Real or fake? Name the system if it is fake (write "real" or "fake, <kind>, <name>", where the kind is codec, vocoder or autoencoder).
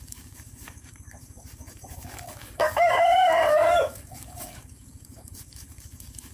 fake, codec, DAC